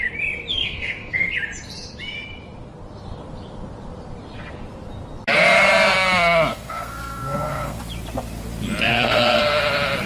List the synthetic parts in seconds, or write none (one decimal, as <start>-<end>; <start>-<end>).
0.5-1.3; 6.5-7.8; 8.9-9.4